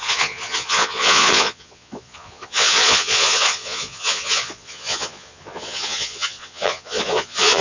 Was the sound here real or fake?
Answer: fake